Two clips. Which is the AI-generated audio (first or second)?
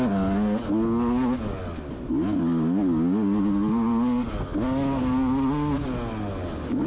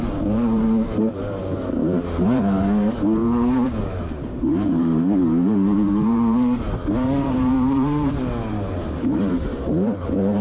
second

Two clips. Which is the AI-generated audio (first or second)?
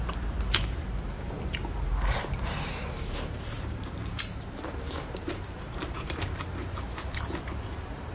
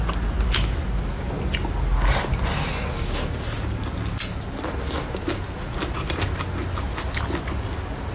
first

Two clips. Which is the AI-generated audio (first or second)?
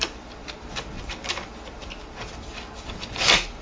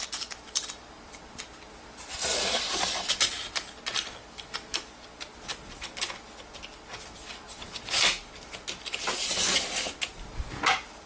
first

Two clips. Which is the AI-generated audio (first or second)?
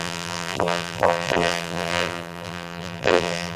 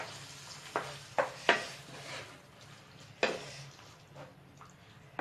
first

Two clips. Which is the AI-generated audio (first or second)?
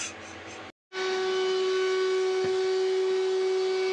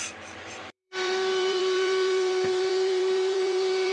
second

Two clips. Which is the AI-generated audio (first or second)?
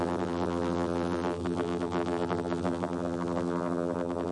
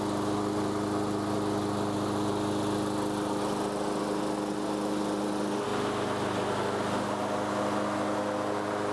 first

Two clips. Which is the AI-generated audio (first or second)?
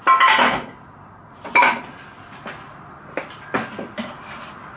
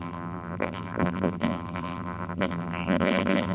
second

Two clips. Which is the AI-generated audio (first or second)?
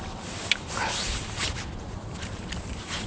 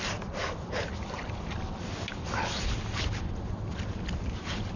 first